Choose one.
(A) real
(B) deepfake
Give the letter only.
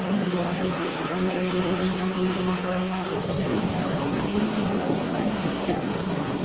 B